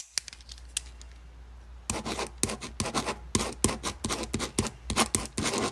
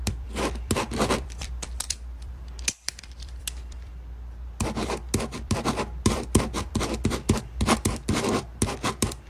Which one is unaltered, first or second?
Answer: first